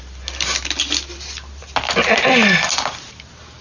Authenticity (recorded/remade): recorded